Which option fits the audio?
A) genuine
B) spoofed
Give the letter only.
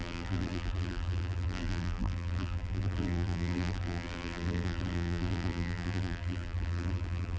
B